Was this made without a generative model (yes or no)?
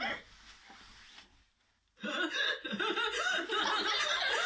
yes